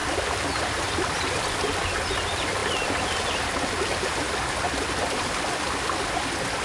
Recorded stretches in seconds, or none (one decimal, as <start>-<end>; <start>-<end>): 0.0-6.6